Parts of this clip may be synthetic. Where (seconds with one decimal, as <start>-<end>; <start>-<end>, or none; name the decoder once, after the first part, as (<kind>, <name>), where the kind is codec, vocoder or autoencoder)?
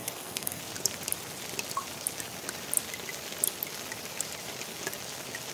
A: 0.0-0.6 (codec, SNAC)